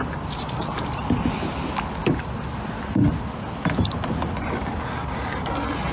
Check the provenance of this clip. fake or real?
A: real